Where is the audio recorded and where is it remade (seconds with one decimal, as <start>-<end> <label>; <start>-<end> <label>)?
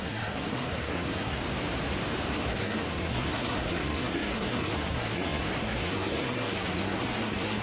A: 0.0-1.4 remade; 1.4-2.3 recorded; 2.3-7.6 remade